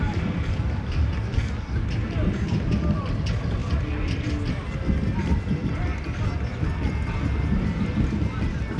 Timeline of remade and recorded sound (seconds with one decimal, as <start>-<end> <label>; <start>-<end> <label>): 0.0-8.8 recorded